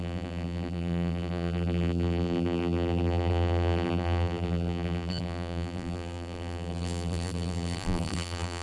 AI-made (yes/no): yes